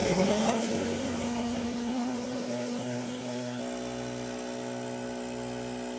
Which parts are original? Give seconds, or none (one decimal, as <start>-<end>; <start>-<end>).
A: 3.6-6.0